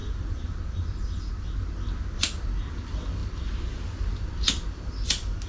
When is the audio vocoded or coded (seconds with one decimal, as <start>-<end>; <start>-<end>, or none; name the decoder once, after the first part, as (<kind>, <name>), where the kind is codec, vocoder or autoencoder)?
none